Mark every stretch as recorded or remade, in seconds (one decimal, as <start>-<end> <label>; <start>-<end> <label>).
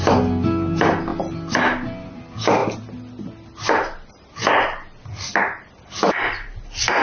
0.0-7.0 recorded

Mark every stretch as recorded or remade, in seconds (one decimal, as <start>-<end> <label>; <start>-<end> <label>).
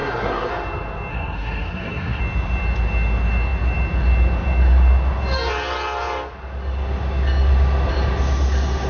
0.0-0.5 remade; 0.5-1.1 recorded; 1.1-2.2 remade; 2.2-8.9 recorded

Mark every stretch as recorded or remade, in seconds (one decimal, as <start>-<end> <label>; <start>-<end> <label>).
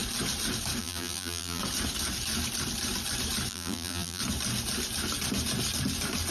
0.0-0.8 recorded; 0.8-1.6 remade; 1.6-3.5 recorded; 3.5-4.2 remade; 4.2-6.3 recorded